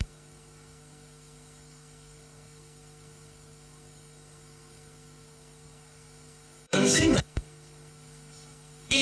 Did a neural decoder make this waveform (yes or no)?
yes